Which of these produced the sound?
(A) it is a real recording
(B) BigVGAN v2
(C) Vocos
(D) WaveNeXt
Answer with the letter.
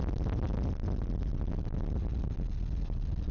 A